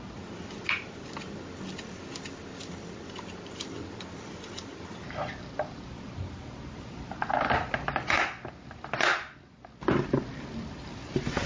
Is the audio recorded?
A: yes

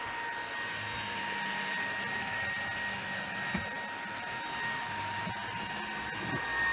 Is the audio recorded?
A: yes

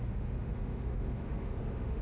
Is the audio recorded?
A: no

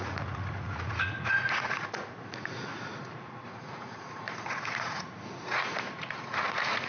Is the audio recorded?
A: no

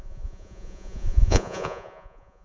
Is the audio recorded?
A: no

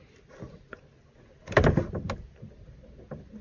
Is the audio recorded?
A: yes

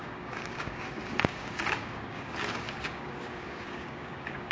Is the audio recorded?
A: no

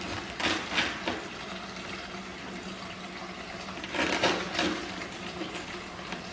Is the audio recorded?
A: yes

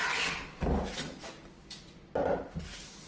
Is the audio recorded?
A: yes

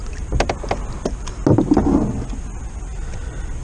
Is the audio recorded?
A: yes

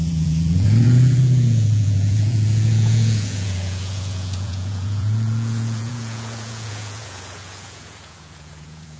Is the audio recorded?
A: no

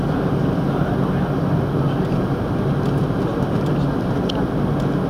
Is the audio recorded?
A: yes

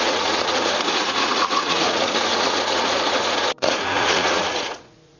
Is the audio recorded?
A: no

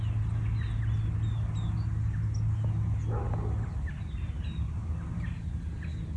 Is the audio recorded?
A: yes